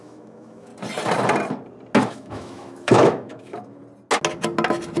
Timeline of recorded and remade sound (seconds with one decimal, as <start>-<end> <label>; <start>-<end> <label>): 0.0-0.7 remade; 0.7-2.1 recorded; 2.1-3.8 remade; 3.8-5.0 recorded